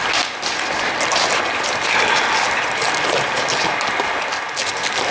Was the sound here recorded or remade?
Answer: recorded